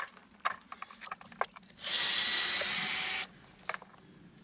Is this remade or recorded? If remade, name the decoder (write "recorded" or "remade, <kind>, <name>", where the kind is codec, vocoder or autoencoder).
recorded